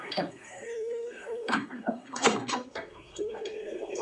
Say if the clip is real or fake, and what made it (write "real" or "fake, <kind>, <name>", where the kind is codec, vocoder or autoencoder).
fake, codec, SNAC